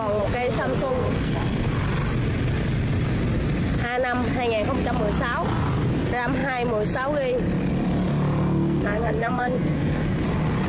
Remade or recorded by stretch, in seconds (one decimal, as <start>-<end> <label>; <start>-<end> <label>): 0.0-0.9 recorded; 0.9-1.7 remade; 1.7-8.4 recorded; 8.4-10.2 remade; 10.2-10.7 recorded